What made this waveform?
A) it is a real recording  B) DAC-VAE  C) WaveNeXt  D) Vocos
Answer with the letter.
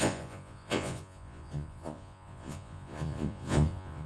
D